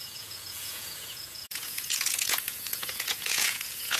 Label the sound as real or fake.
fake